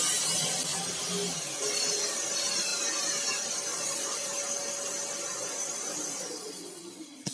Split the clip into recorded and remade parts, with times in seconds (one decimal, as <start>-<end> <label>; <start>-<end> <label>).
0.0-3.7 recorded; 3.7-4.3 remade; 4.3-6.2 recorded; 6.2-7.3 remade